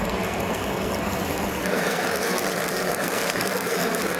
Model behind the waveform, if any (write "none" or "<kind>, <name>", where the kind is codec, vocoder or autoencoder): codec, SNAC